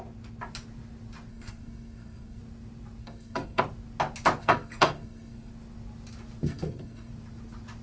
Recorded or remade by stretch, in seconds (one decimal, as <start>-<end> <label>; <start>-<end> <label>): 0.0-1.3 recorded; 1.3-2.4 remade; 2.4-3.0 recorded; 3.0-3.6 remade; 3.6-4.4 recorded; 4.4-5.5 remade; 5.5-6.4 recorded; 6.4-7.1 remade; 7.1-7.8 recorded

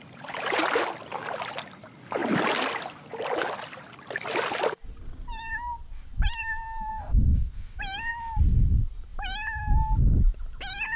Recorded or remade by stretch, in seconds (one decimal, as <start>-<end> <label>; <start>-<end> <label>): 0.0-6.9 recorded; 6.9-7.8 remade; 7.8-11.0 recorded

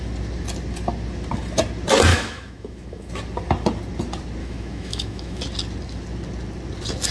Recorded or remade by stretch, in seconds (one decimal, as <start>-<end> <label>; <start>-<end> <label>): 0.0-2.1 recorded; 2.1-3.1 remade; 3.1-4.4 recorded; 4.4-5.4 remade; 5.4-7.1 recorded

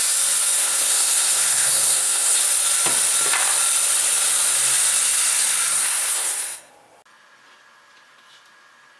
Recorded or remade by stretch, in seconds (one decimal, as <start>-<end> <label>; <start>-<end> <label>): 0.0-0.6 recorded; 0.6-2.4 remade; 2.4-5.7 recorded; 5.7-6.7 remade; 6.7-9.0 recorded

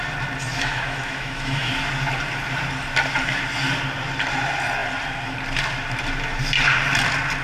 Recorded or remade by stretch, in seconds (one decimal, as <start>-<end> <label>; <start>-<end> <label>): 0.0-0.5 recorded; 0.5-1.7 remade; 1.7-7.4 recorded

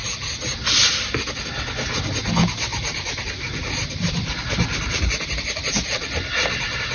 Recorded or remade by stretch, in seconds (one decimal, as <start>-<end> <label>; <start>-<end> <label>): 0.0-2.7 recorded; 2.7-6.9 remade

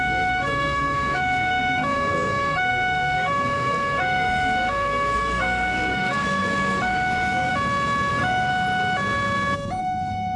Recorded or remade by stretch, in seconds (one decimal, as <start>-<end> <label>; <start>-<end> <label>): 0.0-7.5 remade; 7.5-8.1 recorded; 8.1-8.5 remade; 8.5-9.8 recorded; 9.8-10.4 remade

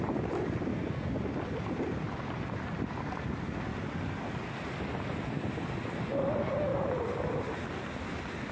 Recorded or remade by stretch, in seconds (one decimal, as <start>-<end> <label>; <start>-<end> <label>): 0.0-0.7 recorded; 0.7-1.2 remade; 1.2-8.5 recorded